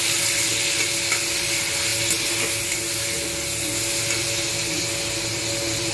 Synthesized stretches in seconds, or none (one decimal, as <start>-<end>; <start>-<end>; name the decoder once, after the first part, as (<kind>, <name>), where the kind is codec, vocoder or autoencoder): none

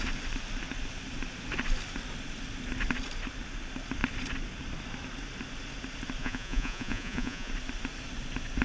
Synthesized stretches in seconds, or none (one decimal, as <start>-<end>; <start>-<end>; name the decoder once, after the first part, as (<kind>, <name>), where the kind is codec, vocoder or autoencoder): 6.2-7.5 (vocoder, Vocos)

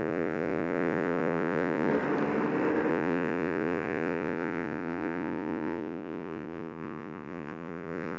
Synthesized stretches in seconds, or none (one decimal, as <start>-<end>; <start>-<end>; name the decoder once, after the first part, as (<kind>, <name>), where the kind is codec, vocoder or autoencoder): 0.0-1.9 (vocoder, Vocos); 2.9-8.2